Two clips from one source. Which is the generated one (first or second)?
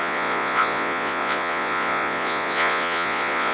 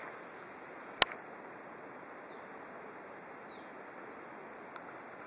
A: first